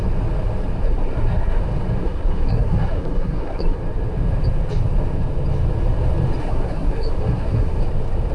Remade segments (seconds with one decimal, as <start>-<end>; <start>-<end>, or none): 0.8-1.6; 2.0-3.8; 6.4-7.8